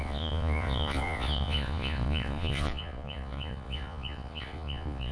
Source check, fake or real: fake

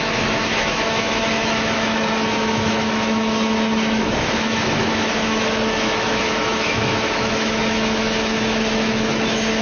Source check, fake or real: fake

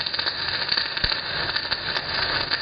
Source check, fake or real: real